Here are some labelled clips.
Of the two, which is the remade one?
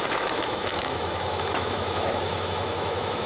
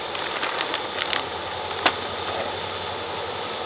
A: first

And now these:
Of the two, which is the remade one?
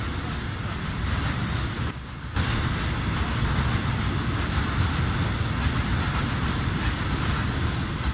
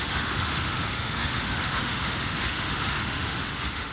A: second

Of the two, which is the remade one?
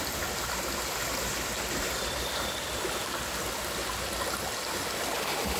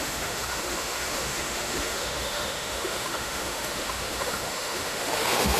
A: second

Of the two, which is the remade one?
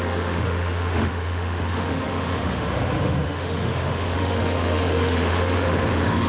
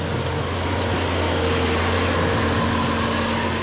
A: first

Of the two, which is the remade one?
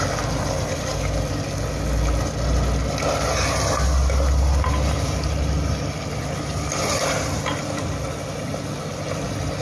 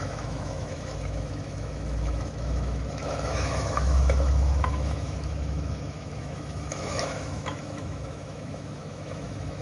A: second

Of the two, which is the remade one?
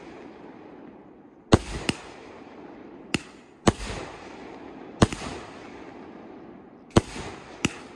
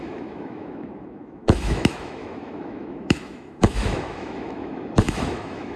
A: second